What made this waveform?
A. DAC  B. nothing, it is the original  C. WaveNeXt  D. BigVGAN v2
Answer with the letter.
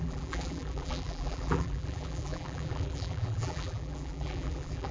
D